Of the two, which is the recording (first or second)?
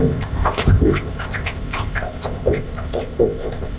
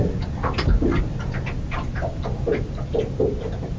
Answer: second